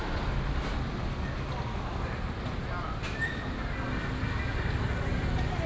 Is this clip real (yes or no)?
yes